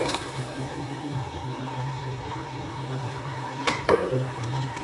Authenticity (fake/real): fake